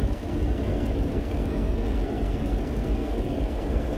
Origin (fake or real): fake